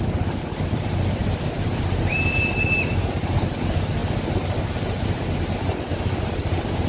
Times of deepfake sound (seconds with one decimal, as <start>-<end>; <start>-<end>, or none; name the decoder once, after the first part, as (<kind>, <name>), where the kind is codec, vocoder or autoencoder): none